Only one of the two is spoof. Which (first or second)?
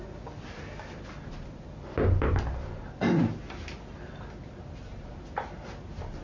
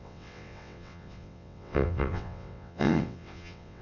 second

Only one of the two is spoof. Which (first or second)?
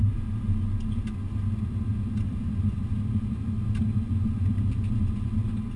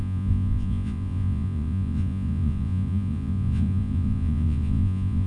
second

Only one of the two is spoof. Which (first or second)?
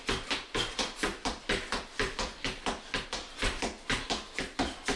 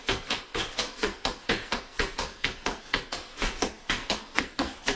second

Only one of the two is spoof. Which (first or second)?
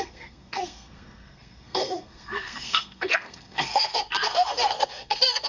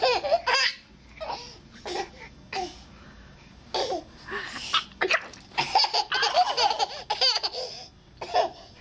first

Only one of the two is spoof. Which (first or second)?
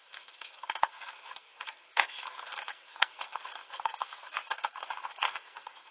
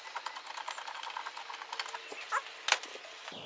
first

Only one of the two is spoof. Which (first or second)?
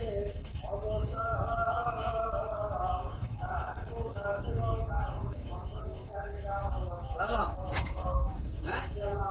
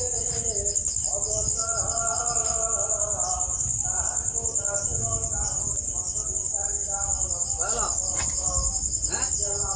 first